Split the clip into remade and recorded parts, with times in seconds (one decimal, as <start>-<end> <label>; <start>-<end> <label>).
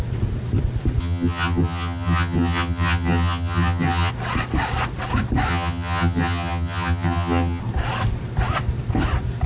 0.0-1.0 recorded; 1.0-4.1 remade; 4.1-5.5 recorded; 5.5-7.6 remade; 7.6-9.5 recorded